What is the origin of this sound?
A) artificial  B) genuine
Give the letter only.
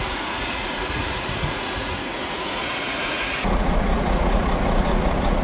A